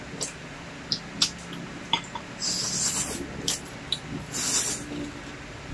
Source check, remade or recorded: recorded